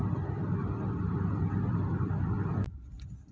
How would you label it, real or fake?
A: real